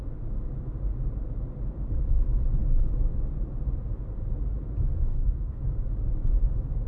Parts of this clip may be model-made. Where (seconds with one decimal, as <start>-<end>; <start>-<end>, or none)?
5.1-5.6